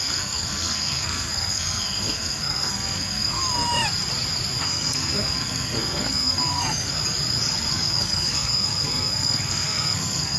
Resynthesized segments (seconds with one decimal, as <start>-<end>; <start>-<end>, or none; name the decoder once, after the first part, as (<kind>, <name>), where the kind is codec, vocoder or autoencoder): 0.0-3.4 (codec, SNAC); 4.6-7.0; 7.7-10.4